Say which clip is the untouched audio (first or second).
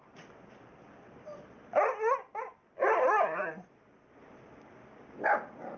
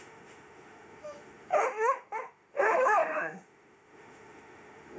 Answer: first